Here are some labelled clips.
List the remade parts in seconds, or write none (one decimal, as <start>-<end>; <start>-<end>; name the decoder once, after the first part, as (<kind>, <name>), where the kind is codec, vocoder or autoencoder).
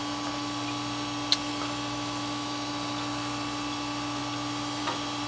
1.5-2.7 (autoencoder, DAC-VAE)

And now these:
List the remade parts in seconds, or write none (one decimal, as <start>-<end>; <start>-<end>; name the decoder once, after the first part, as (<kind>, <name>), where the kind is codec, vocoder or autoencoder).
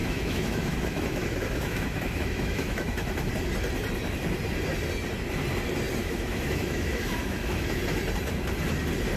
0.0-3.3 (autoencoder, DAC-VAE); 6.0-7.8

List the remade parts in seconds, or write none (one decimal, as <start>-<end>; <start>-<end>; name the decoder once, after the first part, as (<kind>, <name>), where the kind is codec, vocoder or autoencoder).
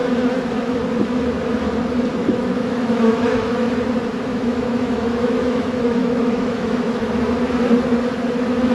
2.2-3.7 (autoencoder, DAC-VAE); 4.3-7.0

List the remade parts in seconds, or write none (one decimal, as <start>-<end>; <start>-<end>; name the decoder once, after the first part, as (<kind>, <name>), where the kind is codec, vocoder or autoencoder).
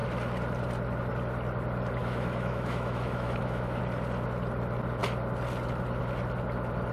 2.0-3.8 (autoencoder, DAC-VAE)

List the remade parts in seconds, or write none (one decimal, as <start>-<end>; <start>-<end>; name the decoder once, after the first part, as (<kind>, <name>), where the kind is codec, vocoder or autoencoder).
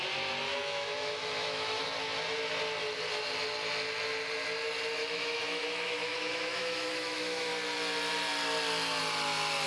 0.5-1.8 (autoencoder, DAC-VAE); 5.0-7.5